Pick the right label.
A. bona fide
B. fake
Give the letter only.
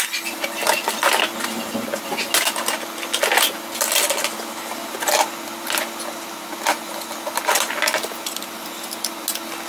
A